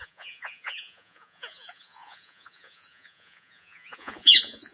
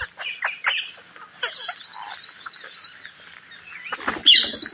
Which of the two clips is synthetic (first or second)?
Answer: first